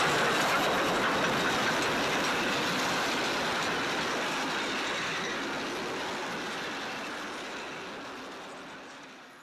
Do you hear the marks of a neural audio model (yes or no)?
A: no